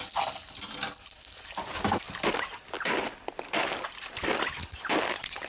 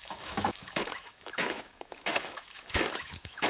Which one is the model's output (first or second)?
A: second